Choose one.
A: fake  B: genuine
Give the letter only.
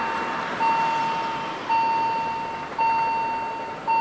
B